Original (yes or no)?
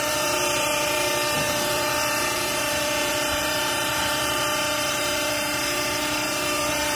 no